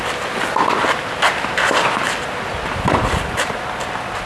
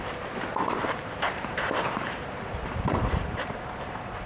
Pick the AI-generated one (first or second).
second